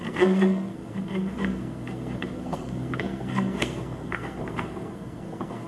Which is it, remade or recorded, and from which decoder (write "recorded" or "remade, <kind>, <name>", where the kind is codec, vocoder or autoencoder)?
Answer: remade, codec, SNAC